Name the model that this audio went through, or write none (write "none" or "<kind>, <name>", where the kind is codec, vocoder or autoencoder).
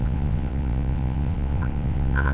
vocoder, WaveNeXt